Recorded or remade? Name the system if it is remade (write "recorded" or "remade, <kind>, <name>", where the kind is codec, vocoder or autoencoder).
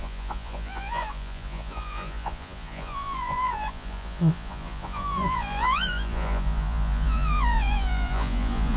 remade, vocoder, Vocos